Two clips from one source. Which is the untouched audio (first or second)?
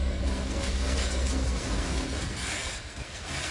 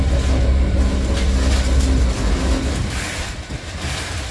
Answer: second